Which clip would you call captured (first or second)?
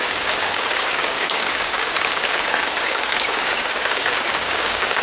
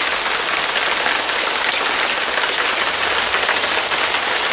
second